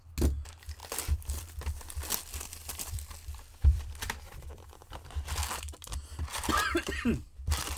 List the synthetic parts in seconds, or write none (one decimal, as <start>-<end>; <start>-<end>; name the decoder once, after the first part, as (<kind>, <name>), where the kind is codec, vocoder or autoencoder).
2.3-4.7 (vocoder, BigVGAN v2); 6.3-6.9